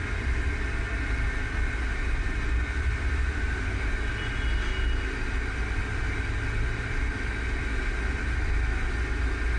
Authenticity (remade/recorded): recorded